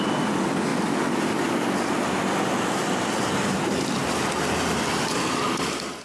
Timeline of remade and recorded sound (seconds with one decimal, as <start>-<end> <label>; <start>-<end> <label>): 0.0-0.7 recorded; 0.7-3.2 remade; 3.2-6.0 recorded